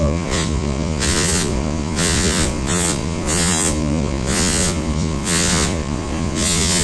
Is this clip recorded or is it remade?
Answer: remade